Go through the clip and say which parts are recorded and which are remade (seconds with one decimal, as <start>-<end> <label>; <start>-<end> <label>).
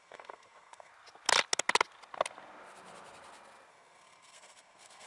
0.0-0.9 remade; 0.9-3.7 recorded; 3.7-5.1 remade